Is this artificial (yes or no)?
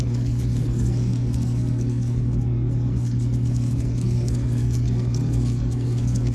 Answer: yes